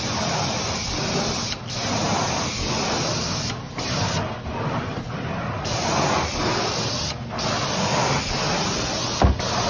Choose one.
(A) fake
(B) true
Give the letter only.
B